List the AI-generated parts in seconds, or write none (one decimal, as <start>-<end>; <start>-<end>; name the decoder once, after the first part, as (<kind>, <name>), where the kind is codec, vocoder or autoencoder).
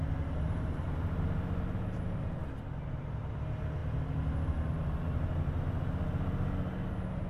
none